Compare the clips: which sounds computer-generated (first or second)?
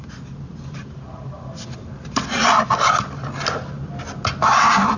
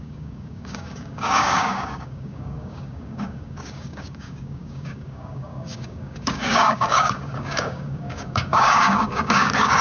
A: second